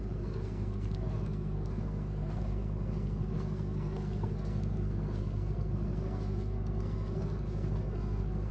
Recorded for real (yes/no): no